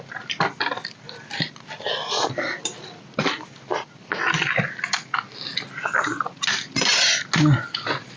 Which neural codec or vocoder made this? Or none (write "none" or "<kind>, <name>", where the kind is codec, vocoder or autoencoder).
none